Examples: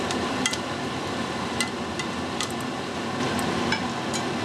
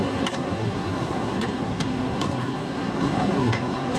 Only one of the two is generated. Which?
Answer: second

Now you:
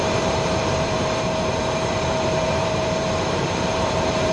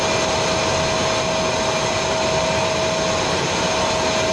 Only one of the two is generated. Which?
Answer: first